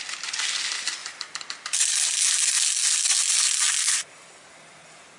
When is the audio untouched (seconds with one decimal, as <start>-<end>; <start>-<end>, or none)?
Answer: 0.0-5.2